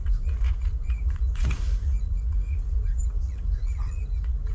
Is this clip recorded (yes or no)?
no